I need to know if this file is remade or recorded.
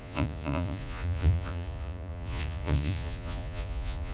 remade